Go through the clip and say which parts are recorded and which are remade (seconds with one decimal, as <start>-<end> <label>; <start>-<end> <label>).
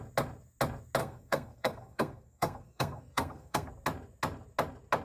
0.0-1.0 recorded; 1.0-3.7 remade; 3.7-5.0 recorded